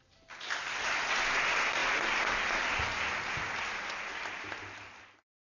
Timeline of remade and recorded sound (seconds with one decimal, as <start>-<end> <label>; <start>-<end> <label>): 0.0-5.4 recorded